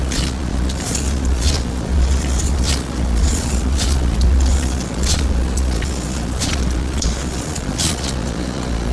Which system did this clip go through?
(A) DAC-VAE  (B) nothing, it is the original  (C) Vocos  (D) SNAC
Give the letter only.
C